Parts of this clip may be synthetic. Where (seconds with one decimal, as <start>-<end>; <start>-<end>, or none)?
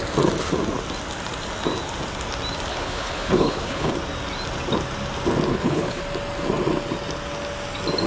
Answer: 2.7-3.9; 5.5-6.0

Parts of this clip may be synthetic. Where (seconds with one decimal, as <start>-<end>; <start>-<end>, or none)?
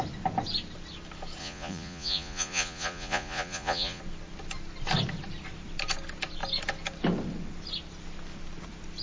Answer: 1.4-4.0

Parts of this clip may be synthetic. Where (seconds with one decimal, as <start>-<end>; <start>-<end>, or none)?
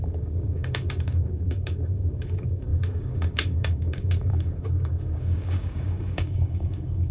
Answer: 0.0-7.1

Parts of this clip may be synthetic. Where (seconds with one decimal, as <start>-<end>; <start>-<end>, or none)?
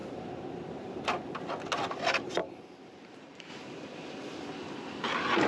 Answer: 0.0-1.4; 2.4-3.5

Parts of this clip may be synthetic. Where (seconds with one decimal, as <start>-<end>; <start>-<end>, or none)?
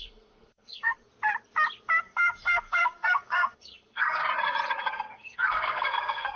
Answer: 0.0-1.0; 2.0-4.2; 4.9-6.4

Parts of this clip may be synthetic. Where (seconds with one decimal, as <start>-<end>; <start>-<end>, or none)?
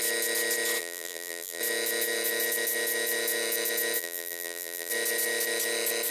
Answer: 0.8-1.6; 4.0-4.9